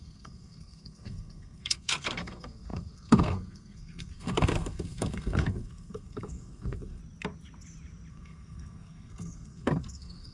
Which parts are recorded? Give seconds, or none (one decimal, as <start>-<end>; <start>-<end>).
7.0-8.1